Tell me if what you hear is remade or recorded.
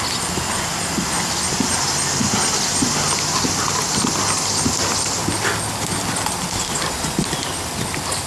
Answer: recorded